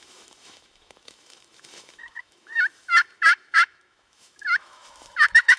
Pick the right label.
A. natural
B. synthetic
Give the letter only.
B